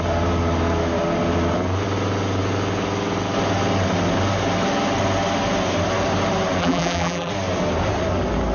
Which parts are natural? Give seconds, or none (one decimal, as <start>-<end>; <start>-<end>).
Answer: 0.0-6.6; 7.3-8.5